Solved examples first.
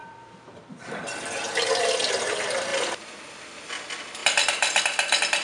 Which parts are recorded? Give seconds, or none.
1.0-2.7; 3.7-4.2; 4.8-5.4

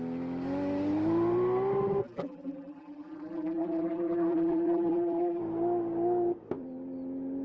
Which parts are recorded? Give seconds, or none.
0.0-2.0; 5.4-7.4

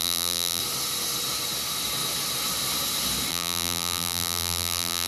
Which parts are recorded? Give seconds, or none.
0.6-3.3

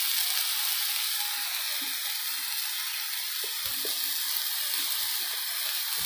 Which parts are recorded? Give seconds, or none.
0.0-6.1

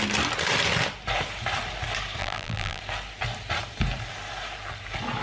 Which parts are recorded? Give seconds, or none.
0.0-2.2; 2.8-5.2

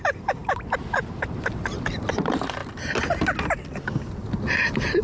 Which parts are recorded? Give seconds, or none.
2.6-4.5

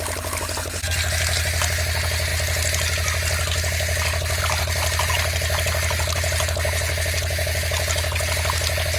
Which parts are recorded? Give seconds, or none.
0.0-9.0